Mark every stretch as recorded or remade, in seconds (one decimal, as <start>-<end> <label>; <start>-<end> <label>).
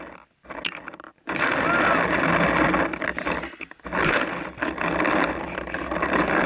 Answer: 0.0-6.5 recorded